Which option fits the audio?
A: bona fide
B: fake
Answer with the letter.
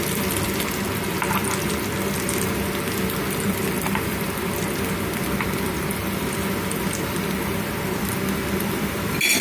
B